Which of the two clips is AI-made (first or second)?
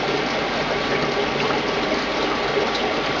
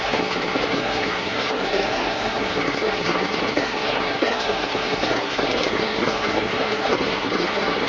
second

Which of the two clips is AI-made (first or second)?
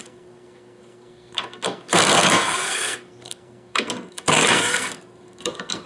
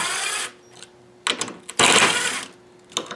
first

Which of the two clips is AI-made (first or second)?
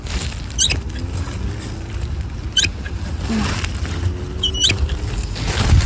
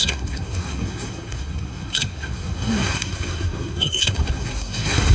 second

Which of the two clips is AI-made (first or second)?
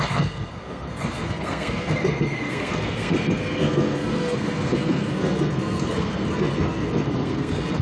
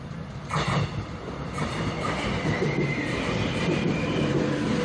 first